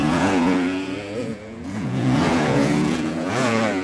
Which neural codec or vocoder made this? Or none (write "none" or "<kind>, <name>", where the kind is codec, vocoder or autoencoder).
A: vocoder, Vocos